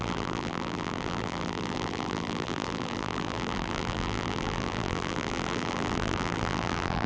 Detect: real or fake fake